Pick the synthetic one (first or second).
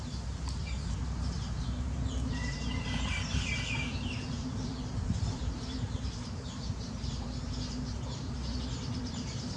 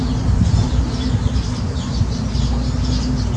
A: first